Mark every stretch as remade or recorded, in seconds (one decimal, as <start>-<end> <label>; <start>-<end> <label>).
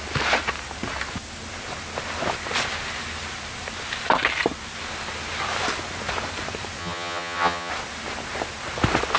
0.0-6.8 recorded; 6.8-7.7 remade; 7.7-9.2 recorded